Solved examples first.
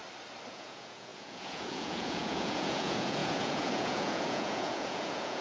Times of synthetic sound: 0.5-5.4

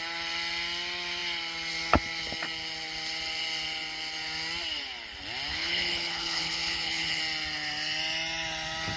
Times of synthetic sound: 5.5-7.2

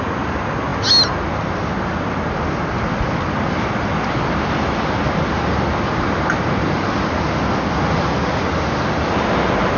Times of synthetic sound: none

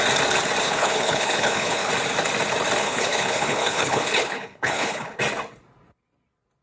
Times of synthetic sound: 0.6-1.9; 2.8-5.2

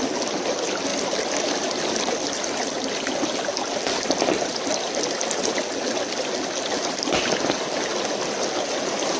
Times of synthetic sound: none

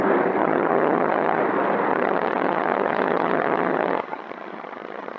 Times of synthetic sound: 0.4-1.4; 1.9-5.2